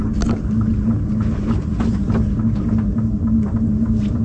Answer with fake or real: real